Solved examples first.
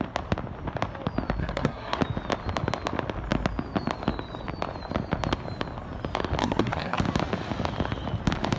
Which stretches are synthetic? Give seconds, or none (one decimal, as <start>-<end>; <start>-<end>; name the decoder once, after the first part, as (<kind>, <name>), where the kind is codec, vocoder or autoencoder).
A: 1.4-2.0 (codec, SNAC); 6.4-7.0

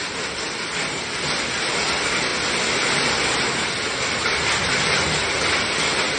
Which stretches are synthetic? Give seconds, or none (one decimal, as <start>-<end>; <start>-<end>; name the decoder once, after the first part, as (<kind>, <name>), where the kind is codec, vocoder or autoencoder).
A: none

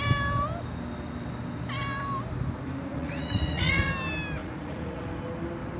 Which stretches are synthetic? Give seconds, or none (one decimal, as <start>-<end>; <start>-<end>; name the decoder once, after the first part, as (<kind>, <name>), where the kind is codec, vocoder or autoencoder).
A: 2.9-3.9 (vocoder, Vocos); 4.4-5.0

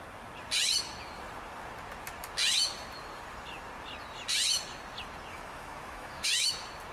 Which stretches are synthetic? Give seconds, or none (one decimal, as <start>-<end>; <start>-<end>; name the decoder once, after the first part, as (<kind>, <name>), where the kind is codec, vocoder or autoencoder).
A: 5.3-6.5 (autoencoder, DAC-VAE)

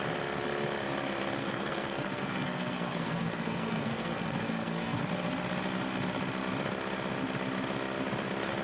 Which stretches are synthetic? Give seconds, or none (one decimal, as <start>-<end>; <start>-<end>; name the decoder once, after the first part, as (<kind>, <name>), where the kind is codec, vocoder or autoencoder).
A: 1.4-5.0 (codec, SNAC)